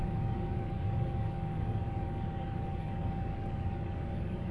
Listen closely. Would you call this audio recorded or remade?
remade